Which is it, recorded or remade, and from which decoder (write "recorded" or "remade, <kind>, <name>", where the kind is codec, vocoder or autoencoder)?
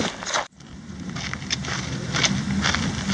recorded